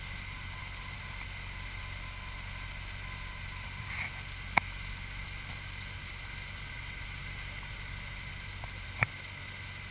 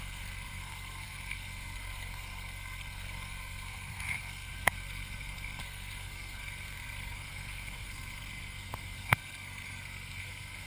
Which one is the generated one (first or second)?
second